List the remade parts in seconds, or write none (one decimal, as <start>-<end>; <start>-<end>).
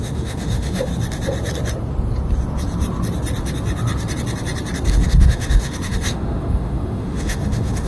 0.0-0.9; 4.9-7.9